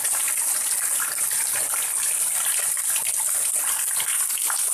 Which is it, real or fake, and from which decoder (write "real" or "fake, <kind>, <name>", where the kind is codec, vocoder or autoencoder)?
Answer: real